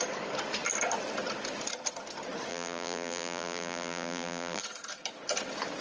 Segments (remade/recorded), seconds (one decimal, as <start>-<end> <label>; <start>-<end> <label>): 0.0-2.5 recorded; 2.5-4.6 remade; 4.6-5.8 recorded